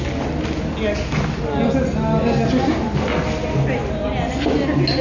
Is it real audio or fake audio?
real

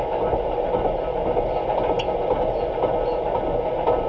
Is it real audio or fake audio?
real